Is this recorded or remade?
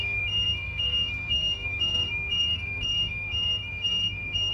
remade